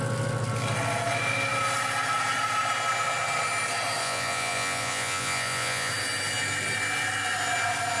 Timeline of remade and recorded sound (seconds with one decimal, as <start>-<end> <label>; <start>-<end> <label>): 0.0-4.0 recorded; 4.0-5.9 remade; 5.9-8.0 recorded